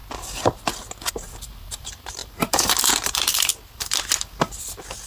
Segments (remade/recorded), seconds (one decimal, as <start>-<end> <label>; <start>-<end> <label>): 0.0-1.1 recorded; 1.1-3.5 remade; 3.5-5.1 recorded